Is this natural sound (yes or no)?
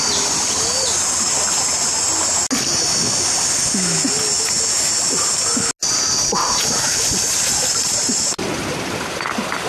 yes